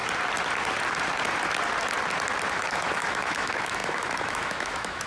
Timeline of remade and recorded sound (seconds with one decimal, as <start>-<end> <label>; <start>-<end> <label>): 0.0-2.5 recorded; 2.5-5.1 remade